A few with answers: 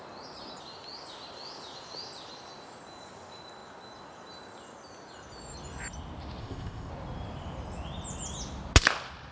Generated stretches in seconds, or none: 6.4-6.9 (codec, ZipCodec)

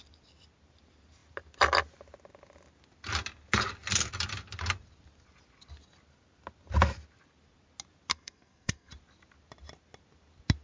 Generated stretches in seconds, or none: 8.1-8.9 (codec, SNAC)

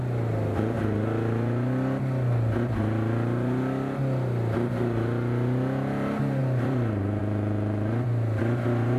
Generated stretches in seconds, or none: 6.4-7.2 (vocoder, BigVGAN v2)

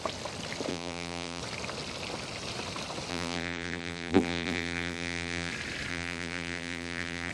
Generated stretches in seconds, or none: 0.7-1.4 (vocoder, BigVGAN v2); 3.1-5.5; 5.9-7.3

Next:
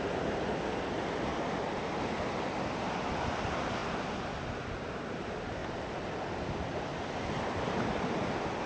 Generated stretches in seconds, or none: none